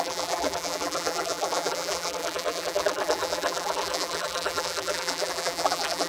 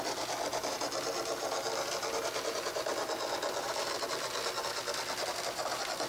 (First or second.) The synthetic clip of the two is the first